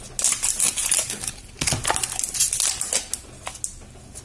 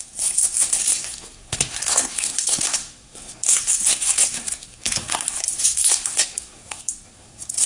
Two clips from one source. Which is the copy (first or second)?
second